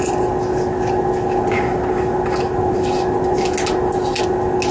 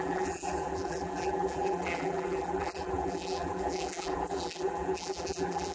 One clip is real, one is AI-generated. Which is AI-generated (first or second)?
second